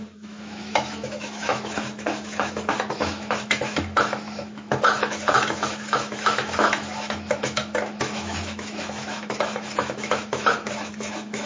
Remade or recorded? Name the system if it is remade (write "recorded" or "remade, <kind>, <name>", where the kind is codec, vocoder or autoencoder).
remade, autoencoder, DAC-VAE